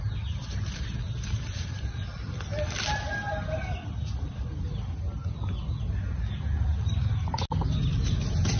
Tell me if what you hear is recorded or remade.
recorded